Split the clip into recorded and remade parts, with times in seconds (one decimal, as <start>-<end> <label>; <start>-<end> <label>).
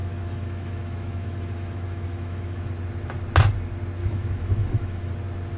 0.0-2.7 remade; 2.7-4.0 recorded; 4.0-5.1 remade; 5.1-5.6 recorded